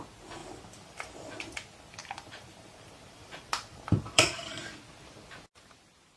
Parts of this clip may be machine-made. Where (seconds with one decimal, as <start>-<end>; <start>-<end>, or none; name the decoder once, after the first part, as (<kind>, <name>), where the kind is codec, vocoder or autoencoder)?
0.4-1.3 (vocoder, BigVGAN v2); 2.0-4.8